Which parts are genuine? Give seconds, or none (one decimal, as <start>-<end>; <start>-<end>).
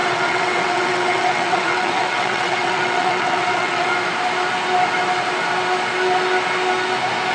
3.9-7.3